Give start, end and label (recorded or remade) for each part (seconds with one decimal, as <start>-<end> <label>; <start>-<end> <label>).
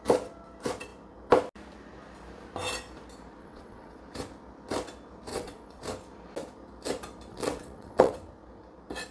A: 0.0-3.4 recorded; 3.4-4.0 remade; 4.0-5.3 recorded; 5.3-5.8 remade; 5.8-7.3 recorded; 7.3-8.1 remade; 8.1-9.1 recorded